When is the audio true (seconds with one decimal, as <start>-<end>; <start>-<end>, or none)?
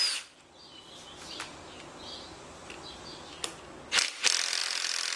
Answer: 0.0-5.2